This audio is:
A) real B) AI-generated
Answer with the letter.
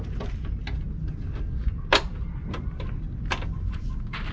A